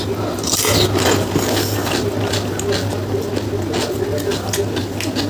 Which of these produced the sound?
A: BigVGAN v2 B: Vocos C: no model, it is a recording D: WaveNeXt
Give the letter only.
C